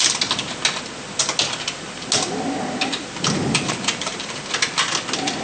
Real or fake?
real